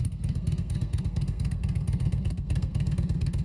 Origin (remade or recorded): remade